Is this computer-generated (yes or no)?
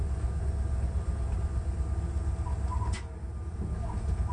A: no